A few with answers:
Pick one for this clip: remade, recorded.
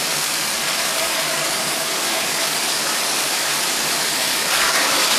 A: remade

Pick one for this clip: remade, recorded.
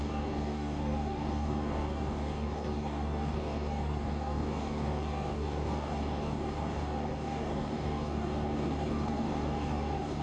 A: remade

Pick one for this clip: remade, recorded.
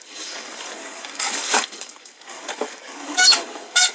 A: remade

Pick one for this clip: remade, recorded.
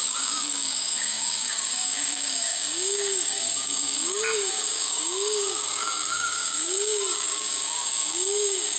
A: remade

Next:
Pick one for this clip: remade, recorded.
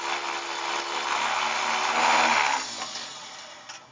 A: recorded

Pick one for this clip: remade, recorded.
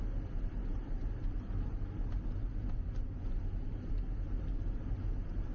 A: recorded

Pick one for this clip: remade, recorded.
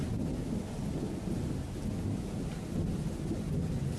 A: recorded